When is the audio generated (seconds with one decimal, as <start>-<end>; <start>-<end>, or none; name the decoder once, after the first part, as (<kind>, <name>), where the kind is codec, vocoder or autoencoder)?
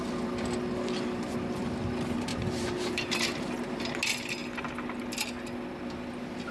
2.3-3.8 (vocoder, BigVGAN v2)